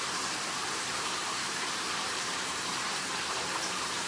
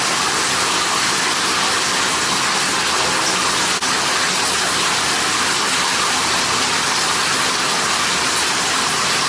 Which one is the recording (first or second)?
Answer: second